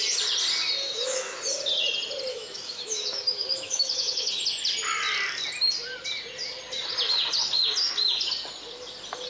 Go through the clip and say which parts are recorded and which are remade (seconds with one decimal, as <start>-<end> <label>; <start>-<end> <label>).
0.0-0.8 recorded; 0.8-1.4 remade; 1.4-2.3 recorded; 2.3-4.3 remade; 4.3-9.3 recorded